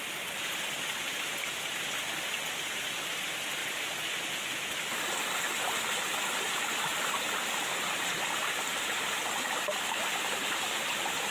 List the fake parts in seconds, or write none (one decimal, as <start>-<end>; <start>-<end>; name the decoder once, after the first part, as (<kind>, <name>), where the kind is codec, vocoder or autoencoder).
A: none